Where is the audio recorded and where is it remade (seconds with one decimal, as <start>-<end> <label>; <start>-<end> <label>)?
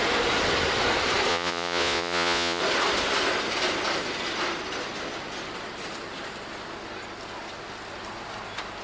0.0-1.3 recorded; 1.3-2.6 remade; 2.6-8.8 recorded